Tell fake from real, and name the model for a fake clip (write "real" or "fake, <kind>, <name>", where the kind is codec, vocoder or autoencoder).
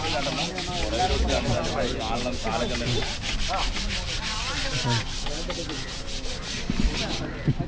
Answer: real